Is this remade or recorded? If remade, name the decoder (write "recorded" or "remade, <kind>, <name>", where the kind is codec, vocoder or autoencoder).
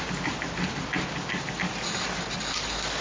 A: recorded